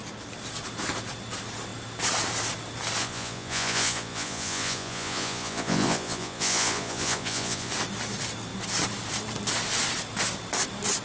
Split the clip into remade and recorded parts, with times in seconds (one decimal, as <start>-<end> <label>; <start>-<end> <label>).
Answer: 0.0-3.0 recorded; 3.0-7.7 remade; 7.7-11.0 recorded